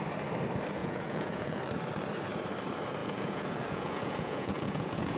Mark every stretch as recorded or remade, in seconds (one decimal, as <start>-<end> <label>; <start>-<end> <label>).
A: 0.0-0.8 recorded; 0.8-1.6 remade; 1.6-3.0 recorded; 3.0-5.2 remade